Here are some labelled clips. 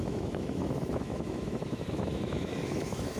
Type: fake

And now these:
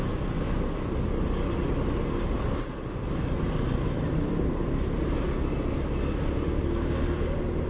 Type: real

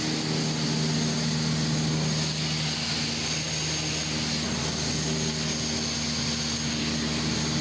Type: real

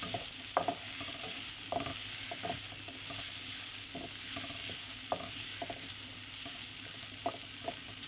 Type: real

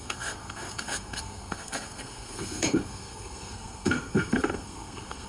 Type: fake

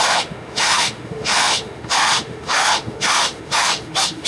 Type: fake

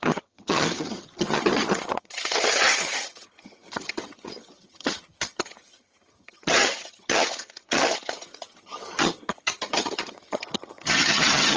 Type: fake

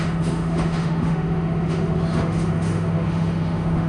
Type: fake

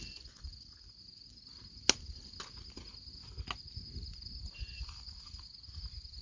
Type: real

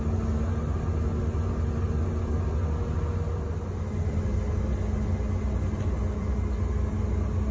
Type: real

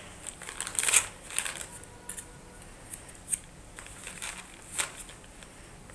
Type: real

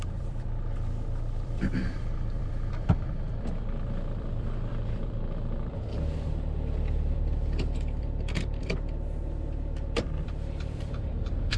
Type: fake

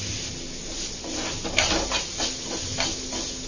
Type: real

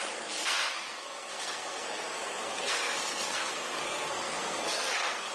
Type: fake